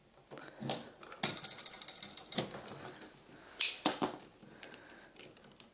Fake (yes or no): no